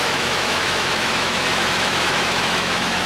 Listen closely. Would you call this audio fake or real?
fake